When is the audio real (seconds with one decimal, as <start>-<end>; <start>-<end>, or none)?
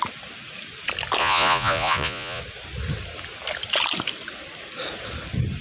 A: 0.0-1.2; 2.4-5.6